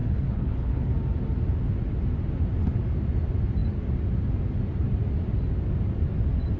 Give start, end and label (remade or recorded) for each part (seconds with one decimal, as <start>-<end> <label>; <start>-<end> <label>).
0.0-0.9 remade; 0.9-6.6 recorded